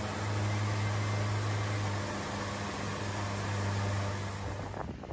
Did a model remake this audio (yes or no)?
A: no